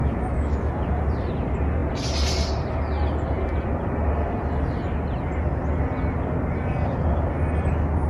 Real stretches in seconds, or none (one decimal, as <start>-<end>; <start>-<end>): 0.7-8.1

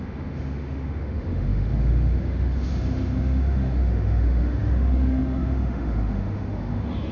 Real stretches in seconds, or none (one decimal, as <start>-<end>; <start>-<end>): none

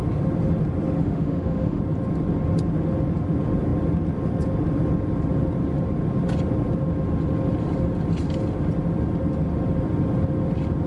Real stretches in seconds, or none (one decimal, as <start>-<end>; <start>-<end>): 0.0-1.0; 1.8-10.9

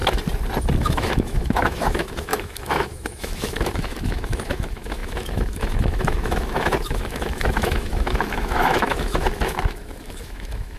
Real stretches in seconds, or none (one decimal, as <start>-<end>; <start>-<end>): 0.0-0.8